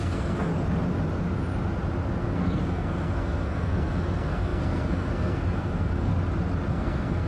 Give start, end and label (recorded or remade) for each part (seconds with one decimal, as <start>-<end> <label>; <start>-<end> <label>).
0.0-0.5 remade; 0.5-2.2 recorded; 2.2-6.1 remade; 6.1-6.7 recorded; 6.7-7.3 remade